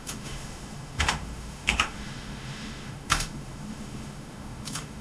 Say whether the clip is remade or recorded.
remade